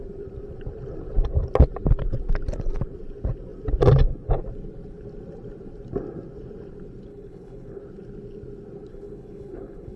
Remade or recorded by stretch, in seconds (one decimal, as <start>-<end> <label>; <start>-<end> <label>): 0.0-7.1 recorded; 7.1-7.8 remade; 7.8-8.9 recorded; 8.9-10.0 remade